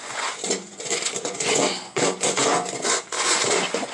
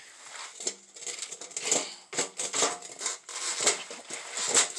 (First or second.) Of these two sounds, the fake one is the first